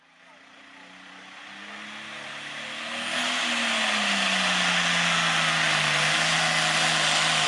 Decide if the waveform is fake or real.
real